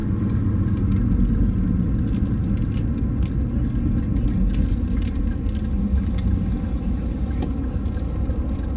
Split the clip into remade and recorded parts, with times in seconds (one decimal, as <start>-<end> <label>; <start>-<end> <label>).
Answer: 0.0-8.8 recorded